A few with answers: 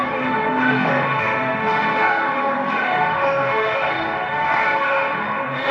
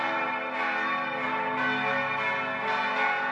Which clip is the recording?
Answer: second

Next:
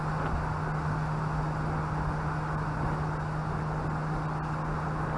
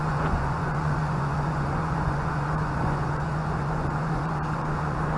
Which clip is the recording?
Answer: first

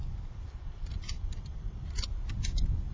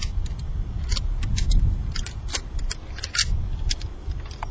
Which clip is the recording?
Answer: second